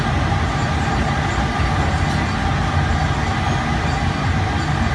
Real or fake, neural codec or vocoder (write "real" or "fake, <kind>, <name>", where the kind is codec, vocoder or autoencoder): real